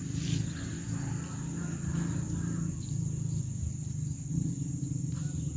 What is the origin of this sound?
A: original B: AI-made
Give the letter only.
A